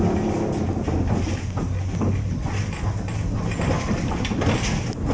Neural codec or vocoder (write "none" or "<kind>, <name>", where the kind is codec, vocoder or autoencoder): none